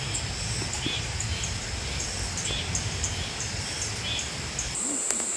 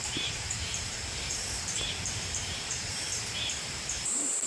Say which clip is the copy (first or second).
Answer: second